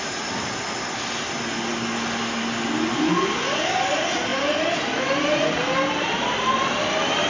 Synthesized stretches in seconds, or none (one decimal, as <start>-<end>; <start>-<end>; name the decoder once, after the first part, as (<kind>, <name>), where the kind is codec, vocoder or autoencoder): none